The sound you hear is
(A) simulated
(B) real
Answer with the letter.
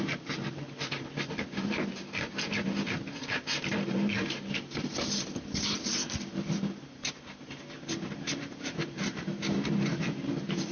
A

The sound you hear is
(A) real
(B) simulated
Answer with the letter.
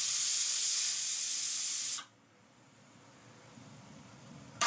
A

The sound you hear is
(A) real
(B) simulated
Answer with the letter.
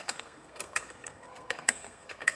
B